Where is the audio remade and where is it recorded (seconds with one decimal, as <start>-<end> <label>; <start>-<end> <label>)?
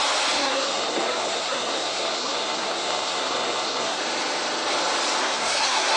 0.0-0.4 recorded; 0.4-4.0 remade; 4.0-5.2 recorded; 5.2-6.0 remade